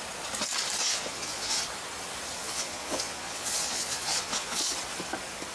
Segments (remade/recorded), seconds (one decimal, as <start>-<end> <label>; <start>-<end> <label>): 0.0-0.8 recorded; 0.8-1.6 remade; 1.6-2.4 recorded; 2.4-4.7 remade; 4.7-5.5 recorded